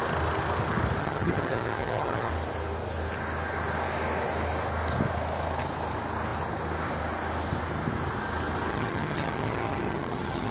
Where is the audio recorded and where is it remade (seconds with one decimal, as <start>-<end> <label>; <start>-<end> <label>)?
0.0-1.0 recorded; 1.0-2.3 remade; 2.3-8.7 recorded; 8.7-10.5 remade